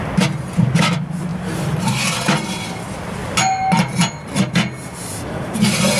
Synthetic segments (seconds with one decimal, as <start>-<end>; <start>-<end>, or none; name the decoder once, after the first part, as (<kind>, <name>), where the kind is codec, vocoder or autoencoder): 1.3-1.9 (vocoder, BigVGAN v2)